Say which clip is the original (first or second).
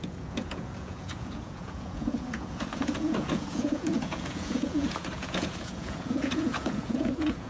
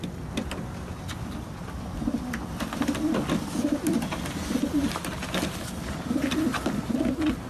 second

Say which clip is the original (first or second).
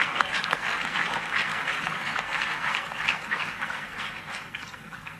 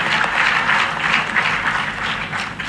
second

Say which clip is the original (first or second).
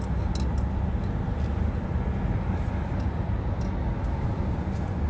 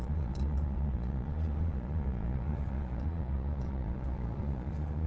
first